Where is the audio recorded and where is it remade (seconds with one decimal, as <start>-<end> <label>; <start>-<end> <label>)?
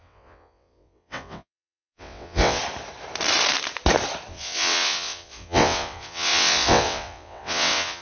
0.0-2.6 remade; 2.6-4.3 recorded; 4.3-8.0 remade